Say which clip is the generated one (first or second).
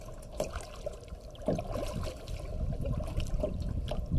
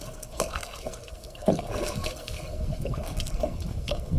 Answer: second